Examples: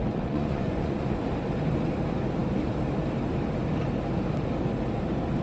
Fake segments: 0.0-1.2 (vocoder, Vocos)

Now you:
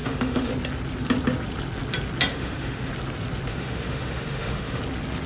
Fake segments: 0.0-0.5 (autoencoder, DAC-VAE); 2.3-2.9; 3.5-4.8

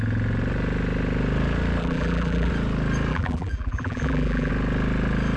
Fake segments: 1.8-2.5 (vocoder, BigVGAN v2); 3.1-4.5

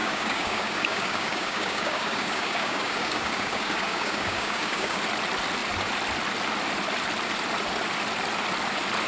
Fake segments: 0.0-5.0 (codec, DAC)

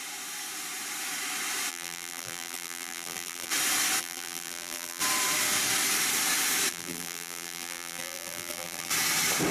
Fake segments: 1.7-3.5 (vocoder, BigVGAN v2); 4.0-5.0; 6.7-8.9

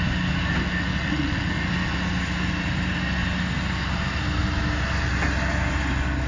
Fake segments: 0.9-1.5 (vocoder, WaveNeXt)

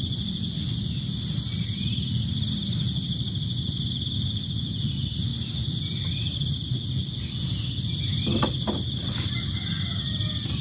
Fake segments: none